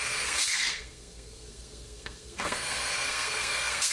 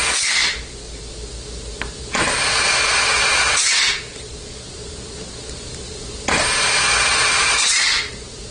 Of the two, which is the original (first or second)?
second